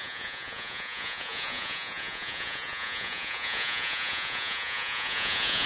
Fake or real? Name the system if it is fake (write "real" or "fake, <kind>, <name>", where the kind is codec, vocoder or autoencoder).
fake, vocoder, Vocos